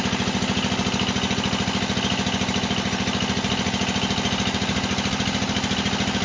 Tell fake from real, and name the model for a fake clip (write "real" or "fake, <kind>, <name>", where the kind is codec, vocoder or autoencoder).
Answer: real